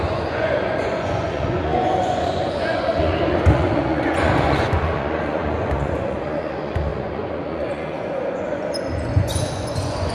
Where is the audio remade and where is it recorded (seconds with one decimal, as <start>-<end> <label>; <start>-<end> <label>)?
0.0-10.1 remade